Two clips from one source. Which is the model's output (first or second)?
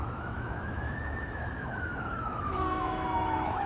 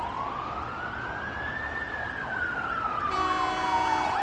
first